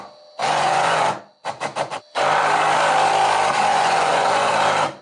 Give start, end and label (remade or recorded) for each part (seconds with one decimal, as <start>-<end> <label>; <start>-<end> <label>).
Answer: 0.0-0.4 recorded; 0.4-1.2 remade; 1.2-3.7 recorded; 3.7-4.5 remade; 4.5-5.0 recorded